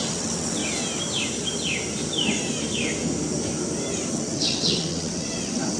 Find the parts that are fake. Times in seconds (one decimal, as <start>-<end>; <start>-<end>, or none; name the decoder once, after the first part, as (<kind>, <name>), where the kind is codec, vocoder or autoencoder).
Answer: 0.0-0.6 (vocoder, WaveNeXt); 4.1-5.8